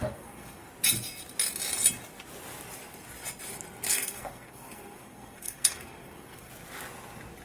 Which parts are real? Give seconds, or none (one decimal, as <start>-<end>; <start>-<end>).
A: 0.7-3.9; 6.5-7.4